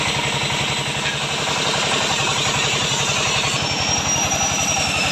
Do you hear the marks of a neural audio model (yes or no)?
no